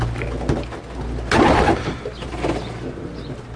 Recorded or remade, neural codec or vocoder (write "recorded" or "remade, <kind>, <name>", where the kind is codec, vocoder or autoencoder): recorded